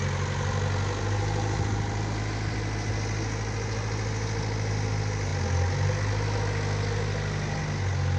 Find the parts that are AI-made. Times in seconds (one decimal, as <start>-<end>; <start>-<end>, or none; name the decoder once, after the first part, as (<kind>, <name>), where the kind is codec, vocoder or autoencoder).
none